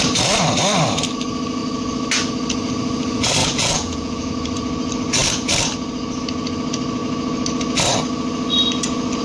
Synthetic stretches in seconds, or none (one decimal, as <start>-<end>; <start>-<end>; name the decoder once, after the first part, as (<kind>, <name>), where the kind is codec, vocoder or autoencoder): 3.4-4.3 (vocoder, Vocos)